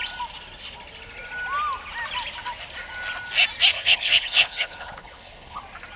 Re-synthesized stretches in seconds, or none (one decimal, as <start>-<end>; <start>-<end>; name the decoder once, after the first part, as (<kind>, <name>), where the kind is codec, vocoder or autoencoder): 3.7-5.6 (codec, HILCodec)